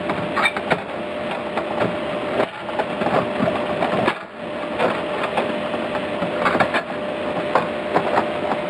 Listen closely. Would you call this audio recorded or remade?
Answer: recorded